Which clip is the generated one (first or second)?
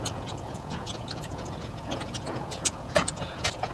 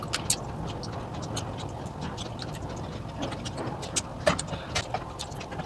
first